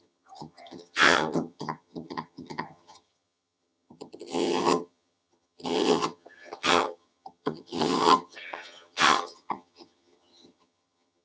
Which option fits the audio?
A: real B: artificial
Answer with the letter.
B